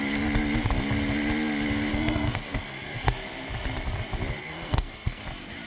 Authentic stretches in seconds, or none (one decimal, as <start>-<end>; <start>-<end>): 0.0-1.9; 3.1-4.4; 5.2-5.7

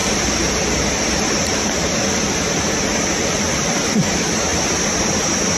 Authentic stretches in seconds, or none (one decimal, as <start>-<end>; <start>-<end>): 0.0-5.6

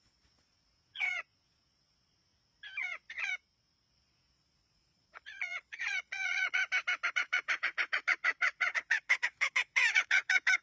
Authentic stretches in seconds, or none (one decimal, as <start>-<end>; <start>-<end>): 2.3-2.8; 3.3-3.9; 6.6-7.1

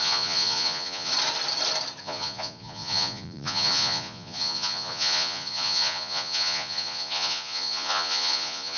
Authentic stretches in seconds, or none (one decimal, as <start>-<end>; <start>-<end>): 1.1-2.0

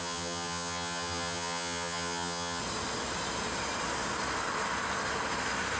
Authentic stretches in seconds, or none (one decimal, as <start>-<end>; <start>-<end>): 2.6-5.8